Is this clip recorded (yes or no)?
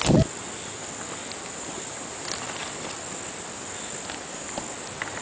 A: yes